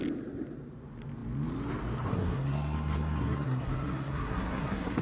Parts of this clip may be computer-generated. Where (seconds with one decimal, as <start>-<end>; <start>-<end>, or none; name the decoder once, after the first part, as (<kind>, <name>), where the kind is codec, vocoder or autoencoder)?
2.1-5.0 (codec, SNAC)